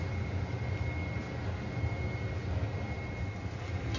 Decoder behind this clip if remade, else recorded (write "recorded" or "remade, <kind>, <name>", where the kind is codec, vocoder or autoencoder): recorded